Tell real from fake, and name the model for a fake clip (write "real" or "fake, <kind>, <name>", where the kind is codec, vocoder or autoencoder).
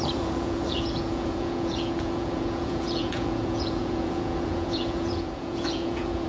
fake, vocoder, Vocos